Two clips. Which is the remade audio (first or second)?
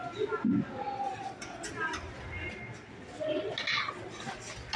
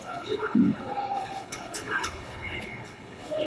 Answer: second